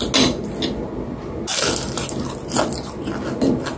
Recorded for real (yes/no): yes